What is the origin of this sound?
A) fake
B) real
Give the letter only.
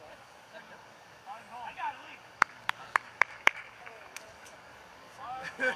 A